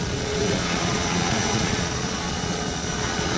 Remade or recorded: remade